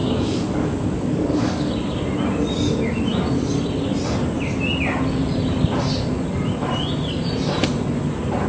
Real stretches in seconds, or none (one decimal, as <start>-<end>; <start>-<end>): 1.7-8.5